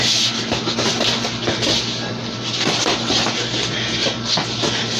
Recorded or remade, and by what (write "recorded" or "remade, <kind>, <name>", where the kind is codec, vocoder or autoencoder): recorded